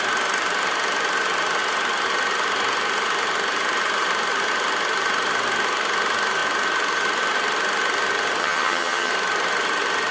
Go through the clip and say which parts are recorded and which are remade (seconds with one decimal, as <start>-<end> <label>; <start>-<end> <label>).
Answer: 0.0-8.4 recorded; 8.4-9.1 remade; 9.1-10.1 recorded